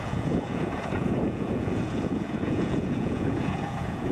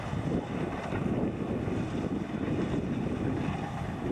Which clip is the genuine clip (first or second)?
second